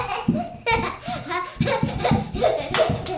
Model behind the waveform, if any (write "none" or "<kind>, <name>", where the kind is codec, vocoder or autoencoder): none